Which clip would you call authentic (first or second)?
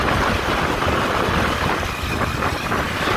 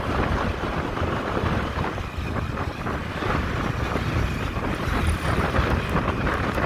first